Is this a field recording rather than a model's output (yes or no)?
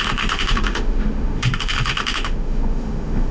no